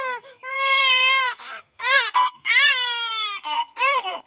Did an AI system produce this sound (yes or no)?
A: yes